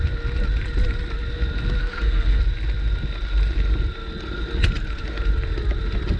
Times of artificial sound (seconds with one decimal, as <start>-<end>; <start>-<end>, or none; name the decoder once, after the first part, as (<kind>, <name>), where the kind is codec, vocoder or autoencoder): 1.8-2.4 (codec, SNAC)